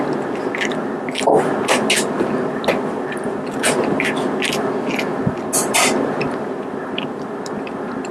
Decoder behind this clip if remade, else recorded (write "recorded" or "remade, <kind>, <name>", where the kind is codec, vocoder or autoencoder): recorded